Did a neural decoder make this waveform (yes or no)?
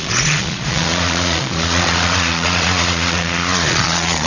yes